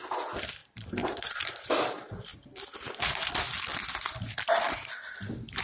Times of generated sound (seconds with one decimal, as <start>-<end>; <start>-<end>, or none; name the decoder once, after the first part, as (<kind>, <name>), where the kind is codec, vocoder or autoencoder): 0.6-1.7 (vocoder, BigVGAN v2); 2.3-3.3